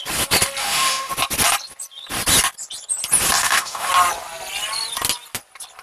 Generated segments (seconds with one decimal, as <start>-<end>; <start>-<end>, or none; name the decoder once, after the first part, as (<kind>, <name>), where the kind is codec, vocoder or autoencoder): 0.6-1.1 (autoencoder, DAC-VAE); 3.4-3.9